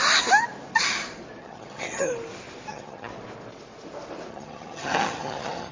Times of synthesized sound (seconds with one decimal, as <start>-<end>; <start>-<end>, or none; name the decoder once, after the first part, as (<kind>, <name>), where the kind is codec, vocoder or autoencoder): 1.4-2.1 (vocoder, HiFi-GAN); 2.7-3.1; 4.3-5.7